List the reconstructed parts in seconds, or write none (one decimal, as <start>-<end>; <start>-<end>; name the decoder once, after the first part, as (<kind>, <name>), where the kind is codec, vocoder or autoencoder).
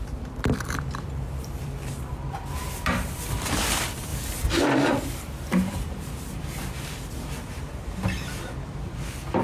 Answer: 0.0-4.1 (vocoder, BigVGAN v2); 4.6-9.4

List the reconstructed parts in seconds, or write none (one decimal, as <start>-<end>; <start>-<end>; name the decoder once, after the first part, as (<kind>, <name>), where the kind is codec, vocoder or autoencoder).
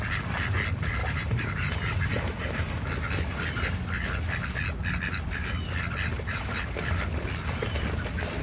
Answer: 1.0-1.7 (vocoder, BigVGAN v2); 2.1-2.6; 6.1-6.9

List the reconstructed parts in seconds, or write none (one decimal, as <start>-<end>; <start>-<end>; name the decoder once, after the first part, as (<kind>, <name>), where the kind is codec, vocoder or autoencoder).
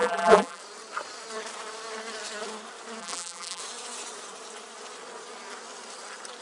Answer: 0.0-0.6 (vocoder, BigVGAN v2); 3.0-3.6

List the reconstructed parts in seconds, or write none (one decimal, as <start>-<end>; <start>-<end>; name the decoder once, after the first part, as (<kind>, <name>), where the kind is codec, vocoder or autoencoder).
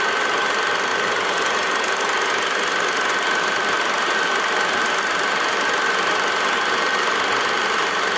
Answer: 0.0-0.9 (vocoder, BigVGAN v2); 3.1-8.2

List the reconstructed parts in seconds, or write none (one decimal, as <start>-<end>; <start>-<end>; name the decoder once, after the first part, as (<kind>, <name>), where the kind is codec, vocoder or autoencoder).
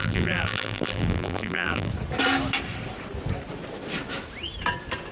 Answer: 0.0-1.9 (vocoder, BigVGAN v2)